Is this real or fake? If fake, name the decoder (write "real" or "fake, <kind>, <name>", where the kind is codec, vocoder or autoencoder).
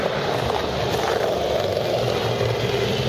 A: real